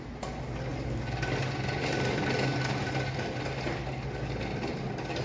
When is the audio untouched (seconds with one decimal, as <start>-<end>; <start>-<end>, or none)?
0.0-5.2